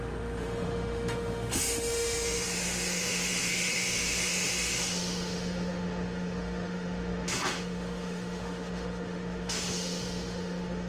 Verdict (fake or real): fake